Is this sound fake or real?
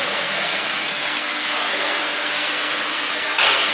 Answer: fake